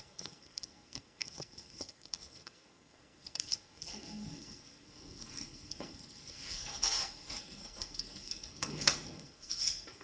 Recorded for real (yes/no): no